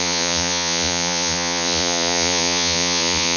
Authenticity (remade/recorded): remade